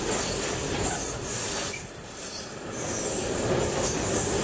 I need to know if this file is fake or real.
real